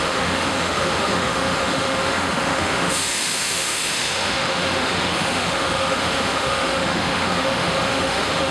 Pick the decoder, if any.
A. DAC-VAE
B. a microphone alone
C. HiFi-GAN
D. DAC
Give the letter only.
A